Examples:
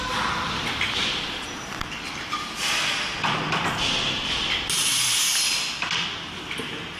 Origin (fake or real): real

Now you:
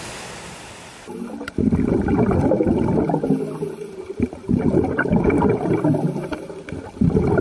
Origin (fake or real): real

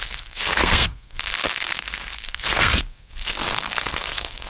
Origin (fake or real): fake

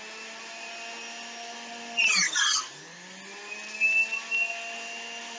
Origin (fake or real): real